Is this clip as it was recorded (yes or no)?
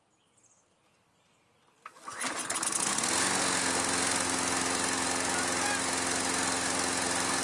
yes